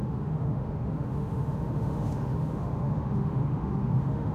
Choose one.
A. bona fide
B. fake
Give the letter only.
B